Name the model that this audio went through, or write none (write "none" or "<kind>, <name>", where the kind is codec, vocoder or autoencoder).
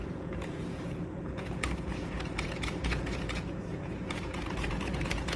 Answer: vocoder, Vocos